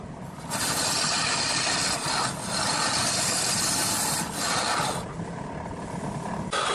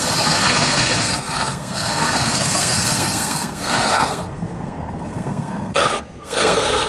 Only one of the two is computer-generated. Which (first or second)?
second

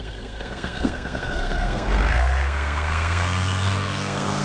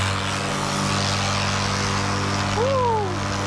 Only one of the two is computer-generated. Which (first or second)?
first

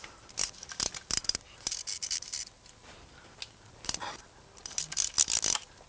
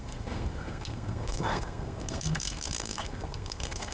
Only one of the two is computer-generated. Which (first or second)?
second